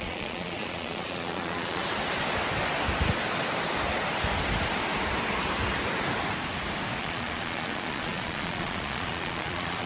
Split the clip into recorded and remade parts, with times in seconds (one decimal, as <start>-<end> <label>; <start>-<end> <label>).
0.0-1.8 remade; 1.8-7.0 recorded; 7.0-9.9 remade